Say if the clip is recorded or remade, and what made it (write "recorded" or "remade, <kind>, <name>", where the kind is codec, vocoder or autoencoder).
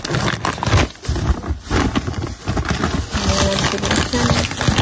recorded